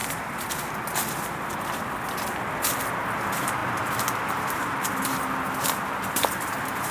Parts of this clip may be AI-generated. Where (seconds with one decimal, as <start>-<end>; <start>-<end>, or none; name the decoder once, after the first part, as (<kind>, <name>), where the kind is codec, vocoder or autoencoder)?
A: none